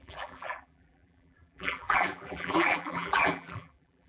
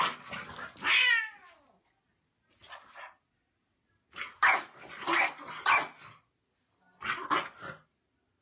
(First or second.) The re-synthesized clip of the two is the first